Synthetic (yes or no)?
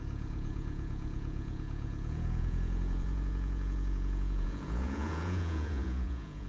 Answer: yes